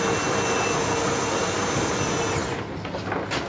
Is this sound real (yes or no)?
yes